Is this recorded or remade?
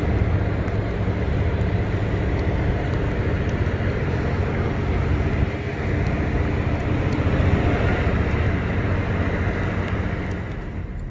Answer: recorded